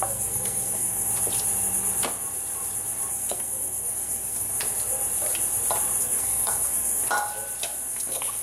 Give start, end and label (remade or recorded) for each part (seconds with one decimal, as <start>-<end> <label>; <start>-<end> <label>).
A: 0.0-1.1 remade; 1.1-3.1 recorded; 3.1-4.5 remade; 4.5-6.0 recorded; 6.0-7.0 remade; 7.0-7.9 recorded; 7.9-8.4 remade